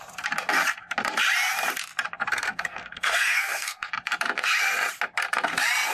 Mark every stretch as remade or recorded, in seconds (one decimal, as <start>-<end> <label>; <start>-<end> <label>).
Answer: 0.0-2.3 recorded; 2.3-3.9 remade; 3.9-5.9 recorded

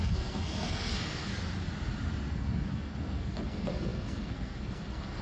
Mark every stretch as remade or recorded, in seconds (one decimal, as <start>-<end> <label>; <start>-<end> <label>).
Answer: 0.0-1.3 remade; 1.3-2.3 recorded; 2.3-5.2 remade